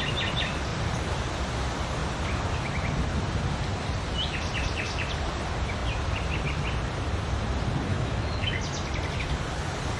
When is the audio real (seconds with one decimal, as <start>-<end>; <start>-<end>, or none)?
0.0-7.9; 8.6-10.0